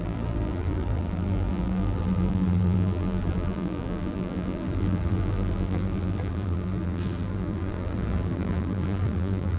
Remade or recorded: remade